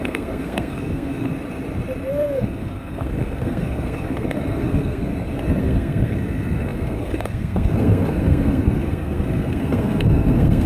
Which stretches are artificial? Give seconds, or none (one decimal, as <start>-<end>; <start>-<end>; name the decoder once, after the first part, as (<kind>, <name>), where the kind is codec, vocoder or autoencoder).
0.0-1.3 (codec, SNAC); 2.1-5.1; 5.6-10.7